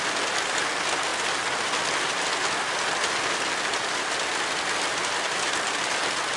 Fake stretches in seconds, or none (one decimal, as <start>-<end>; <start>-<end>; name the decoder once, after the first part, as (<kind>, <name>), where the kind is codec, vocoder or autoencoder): none